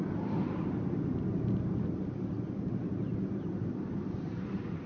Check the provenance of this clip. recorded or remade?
recorded